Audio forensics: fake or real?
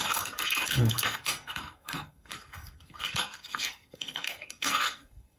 fake